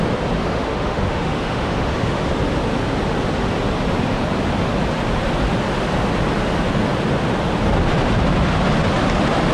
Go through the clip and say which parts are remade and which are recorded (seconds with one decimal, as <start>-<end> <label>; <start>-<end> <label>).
0.0-0.4 recorded; 0.4-2.3 remade; 2.3-9.5 recorded